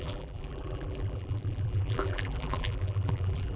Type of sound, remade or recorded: remade